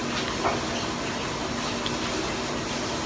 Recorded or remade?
recorded